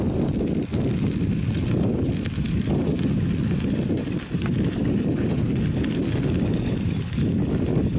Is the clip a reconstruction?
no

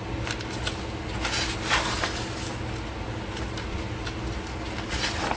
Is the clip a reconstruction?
no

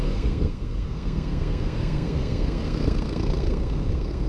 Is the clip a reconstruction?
yes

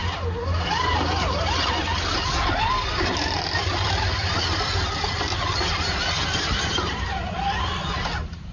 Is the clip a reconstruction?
no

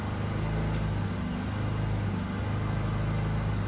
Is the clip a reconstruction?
no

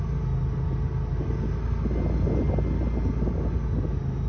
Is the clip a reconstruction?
no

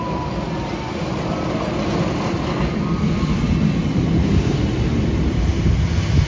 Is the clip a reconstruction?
no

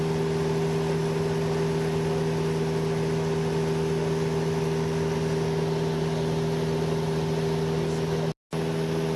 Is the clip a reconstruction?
no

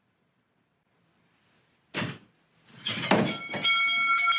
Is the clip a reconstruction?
no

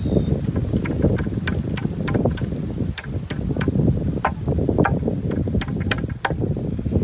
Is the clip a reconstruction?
no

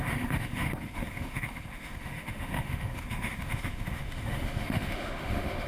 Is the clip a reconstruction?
yes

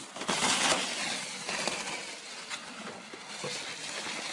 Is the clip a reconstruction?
no